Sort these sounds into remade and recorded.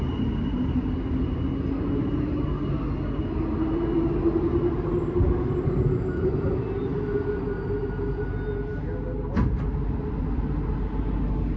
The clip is recorded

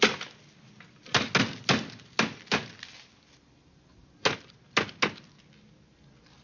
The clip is recorded